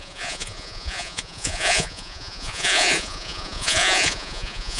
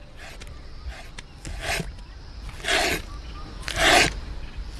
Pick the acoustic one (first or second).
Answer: second